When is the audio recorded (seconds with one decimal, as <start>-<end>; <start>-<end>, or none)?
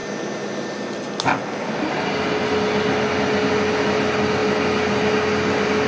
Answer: 0.0-5.9